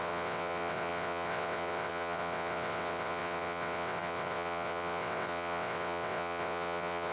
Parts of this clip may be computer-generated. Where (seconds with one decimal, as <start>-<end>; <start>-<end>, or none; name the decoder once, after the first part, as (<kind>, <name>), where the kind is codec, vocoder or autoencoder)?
0.0-7.1 (vocoder, WaveNeXt)